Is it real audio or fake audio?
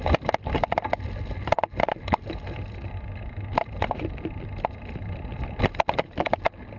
real